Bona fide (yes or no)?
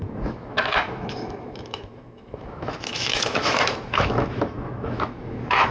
no